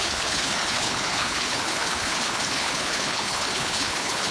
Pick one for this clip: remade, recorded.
remade